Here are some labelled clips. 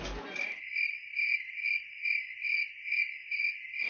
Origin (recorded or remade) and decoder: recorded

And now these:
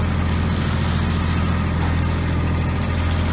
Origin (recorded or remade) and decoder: recorded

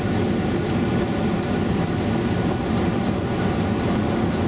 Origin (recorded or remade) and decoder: recorded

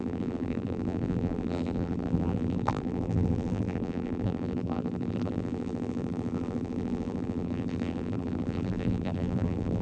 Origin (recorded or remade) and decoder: remade, vocoder, BigVGAN v2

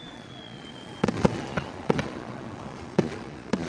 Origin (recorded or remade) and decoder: remade, vocoder, Vocos